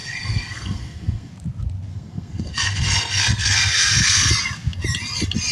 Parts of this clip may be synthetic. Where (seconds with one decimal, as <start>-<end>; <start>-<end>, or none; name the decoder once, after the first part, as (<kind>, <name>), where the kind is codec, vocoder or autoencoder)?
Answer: 0.0-1.3 (codec, SNAC); 1.9-4.3